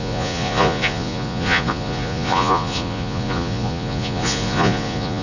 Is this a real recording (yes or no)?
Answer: no